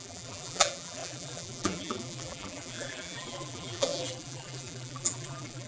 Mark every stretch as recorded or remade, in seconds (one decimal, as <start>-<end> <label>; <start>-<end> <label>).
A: 0.0-5.7 remade